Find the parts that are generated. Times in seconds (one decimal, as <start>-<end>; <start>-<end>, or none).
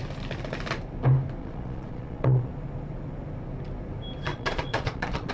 1.4-2.5; 4.3-5.3